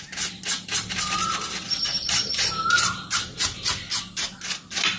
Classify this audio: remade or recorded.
recorded